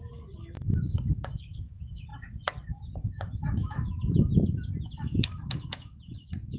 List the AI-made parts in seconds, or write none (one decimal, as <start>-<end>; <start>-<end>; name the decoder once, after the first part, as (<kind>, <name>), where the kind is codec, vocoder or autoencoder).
0.0-2.1 (autoencoder, DAC-VAE); 2.7-4.3; 5.0-6.6